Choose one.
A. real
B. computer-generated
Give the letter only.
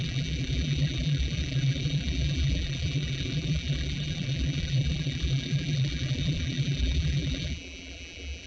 B